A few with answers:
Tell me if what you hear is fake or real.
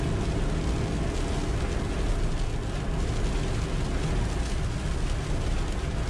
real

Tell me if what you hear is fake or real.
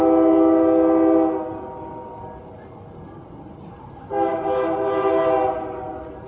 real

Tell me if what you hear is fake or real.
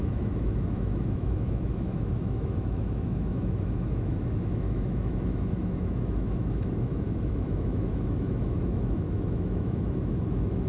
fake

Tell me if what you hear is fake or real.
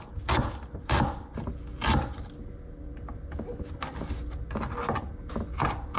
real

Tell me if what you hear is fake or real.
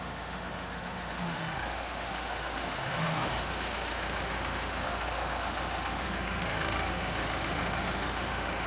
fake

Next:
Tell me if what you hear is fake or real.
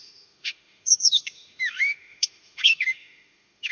fake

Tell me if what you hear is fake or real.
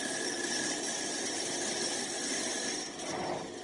real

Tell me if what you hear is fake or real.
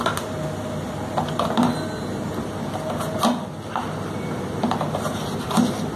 real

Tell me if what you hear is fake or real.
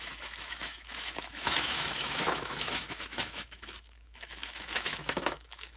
fake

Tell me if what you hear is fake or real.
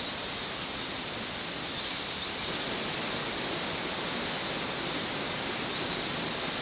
real